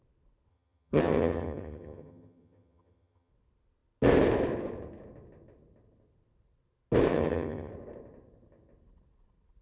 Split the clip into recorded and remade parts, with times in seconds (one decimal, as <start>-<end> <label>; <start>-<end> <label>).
0.0-0.5 recorded; 0.5-3.3 remade; 3.3-7.1 recorded; 7.1-7.7 remade; 7.7-9.6 recorded